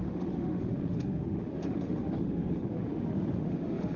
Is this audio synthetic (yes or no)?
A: yes